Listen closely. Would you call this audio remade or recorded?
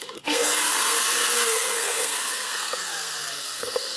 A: remade